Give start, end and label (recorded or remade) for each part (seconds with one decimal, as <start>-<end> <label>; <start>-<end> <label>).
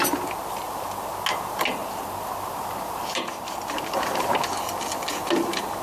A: 0.0-1.8 recorded; 1.8-4.3 remade; 4.3-5.8 recorded